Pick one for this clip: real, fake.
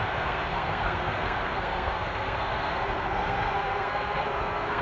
fake